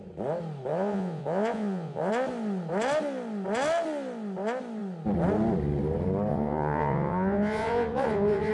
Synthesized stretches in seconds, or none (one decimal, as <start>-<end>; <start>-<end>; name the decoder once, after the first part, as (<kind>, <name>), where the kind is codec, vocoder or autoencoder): 0.7-2.1 (vocoder, Vocos); 6.3-8.5

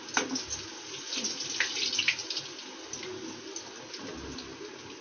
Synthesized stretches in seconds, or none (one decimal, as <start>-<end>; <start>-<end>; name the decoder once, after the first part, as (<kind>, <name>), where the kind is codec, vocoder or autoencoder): none

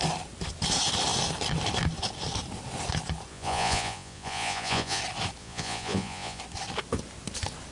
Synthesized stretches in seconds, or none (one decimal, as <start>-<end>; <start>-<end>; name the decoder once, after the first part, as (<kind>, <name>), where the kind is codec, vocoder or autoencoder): 3.3-5.0 (vocoder, Vocos); 5.4-6.4

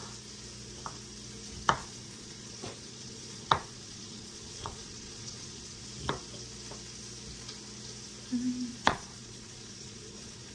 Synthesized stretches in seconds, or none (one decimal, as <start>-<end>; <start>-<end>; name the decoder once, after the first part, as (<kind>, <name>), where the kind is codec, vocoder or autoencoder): 1.8-5.8 (vocoder, Vocos); 8.7-10.5

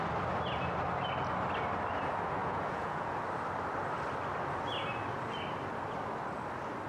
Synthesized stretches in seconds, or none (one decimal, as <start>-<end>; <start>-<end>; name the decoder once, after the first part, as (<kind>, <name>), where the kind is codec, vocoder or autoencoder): 2.4-3.2 (vocoder, Vocos)